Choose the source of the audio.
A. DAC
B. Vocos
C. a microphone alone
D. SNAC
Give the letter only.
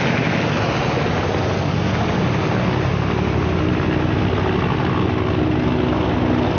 C